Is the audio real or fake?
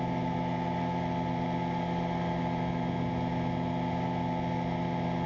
real